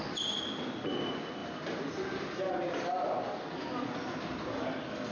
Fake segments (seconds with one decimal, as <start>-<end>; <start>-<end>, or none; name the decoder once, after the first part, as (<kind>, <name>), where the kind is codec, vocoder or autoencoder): none